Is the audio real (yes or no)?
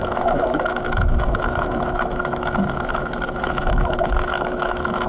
no